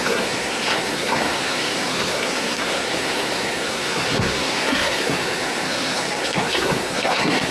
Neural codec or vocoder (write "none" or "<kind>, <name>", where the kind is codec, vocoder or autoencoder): codec, SNAC